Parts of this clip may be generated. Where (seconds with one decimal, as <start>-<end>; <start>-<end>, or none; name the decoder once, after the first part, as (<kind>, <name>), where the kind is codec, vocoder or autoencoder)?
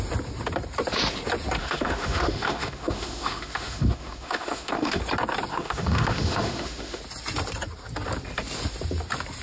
1.6-5.0 (autoencoder, DAC-VAE); 5.5-7.0